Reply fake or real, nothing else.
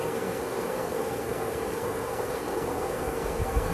fake